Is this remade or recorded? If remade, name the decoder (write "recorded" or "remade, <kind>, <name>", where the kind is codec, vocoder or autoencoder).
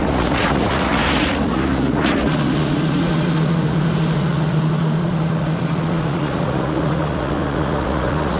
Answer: remade, vocoder, Vocos